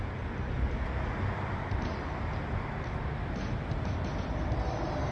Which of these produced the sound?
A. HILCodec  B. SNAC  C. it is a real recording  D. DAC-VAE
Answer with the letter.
C